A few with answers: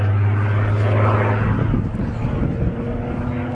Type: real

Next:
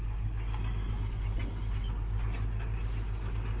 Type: real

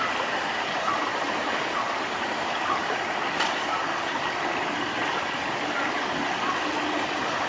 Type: real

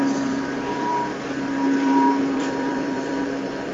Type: fake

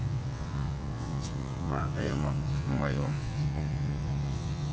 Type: fake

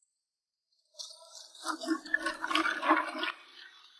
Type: real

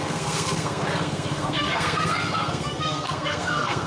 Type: fake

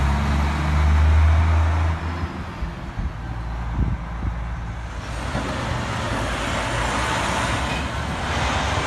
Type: real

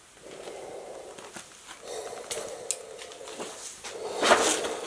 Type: real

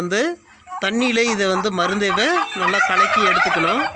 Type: real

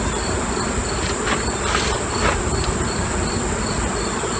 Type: real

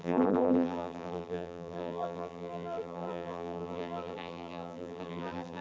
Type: fake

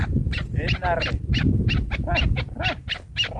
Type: real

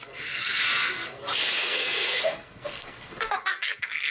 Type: fake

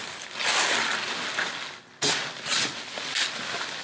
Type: real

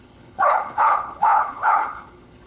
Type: fake